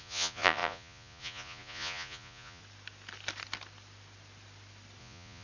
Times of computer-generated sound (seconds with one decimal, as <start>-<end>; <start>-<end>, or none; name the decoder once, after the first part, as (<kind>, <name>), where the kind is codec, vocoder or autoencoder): 0.0-2.6 (vocoder, Vocos); 5.0-5.4